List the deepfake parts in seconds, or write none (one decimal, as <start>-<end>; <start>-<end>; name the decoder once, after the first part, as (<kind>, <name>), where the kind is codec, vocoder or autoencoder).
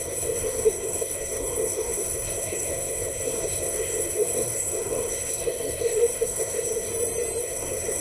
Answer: 0.0-6.9 (codec, SNAC); 7.4-8.0